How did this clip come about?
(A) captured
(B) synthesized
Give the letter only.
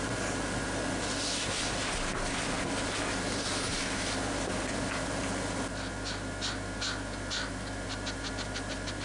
A